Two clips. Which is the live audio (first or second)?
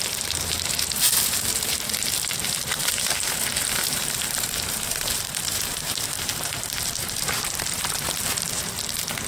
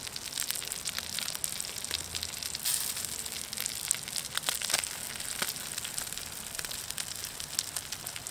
second